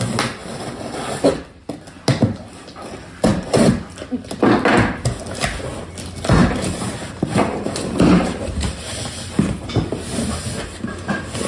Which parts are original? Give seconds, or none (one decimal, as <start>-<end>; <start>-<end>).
0.0-0.4; 1.4-6.4; 9.7-11.5